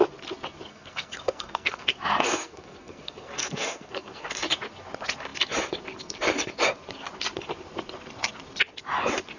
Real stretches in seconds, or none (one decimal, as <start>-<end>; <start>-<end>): 0.0-0.7; 4.3-9.4